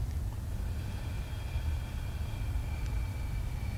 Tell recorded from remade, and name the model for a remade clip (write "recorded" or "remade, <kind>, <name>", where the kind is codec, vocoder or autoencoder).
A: recorded